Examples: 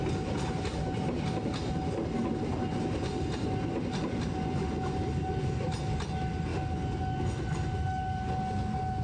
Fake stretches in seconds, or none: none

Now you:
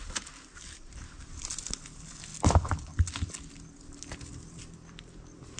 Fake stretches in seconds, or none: none